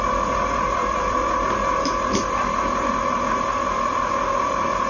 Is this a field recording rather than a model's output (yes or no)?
no